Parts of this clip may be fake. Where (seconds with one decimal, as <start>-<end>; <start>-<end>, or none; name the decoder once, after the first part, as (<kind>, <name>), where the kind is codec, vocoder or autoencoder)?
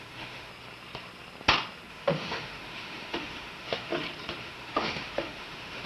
0.0-0.5 (autoencoder, DAC-VAE); 1.9-3.9; 4.4-5.9